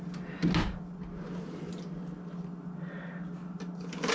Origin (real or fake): real